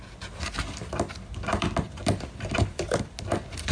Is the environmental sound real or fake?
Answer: real